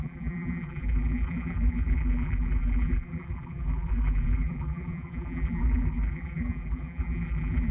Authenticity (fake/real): fake